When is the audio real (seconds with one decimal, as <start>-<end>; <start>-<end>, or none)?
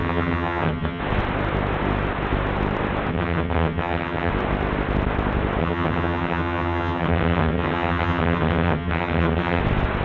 1.0-3.1; 4.3-5.6; 9.6-10.0